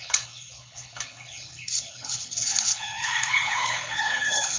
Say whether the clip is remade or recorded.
remade